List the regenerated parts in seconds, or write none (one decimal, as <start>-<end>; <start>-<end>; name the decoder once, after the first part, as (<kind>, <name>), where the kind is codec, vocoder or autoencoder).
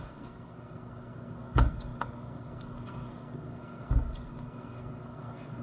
0.0-5.6 (codec, SNAC)